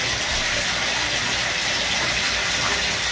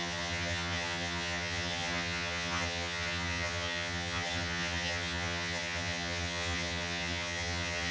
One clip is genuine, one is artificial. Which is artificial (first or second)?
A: second